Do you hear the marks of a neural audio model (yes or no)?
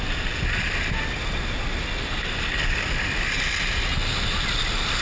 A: no